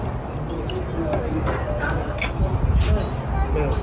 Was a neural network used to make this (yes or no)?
no